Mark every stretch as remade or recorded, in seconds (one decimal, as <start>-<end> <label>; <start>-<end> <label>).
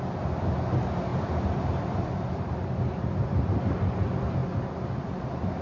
0.0-1.1 recorded; 1.1-3.6 remade; 3.6-5.6 recorded